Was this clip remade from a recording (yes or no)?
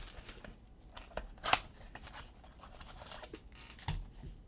no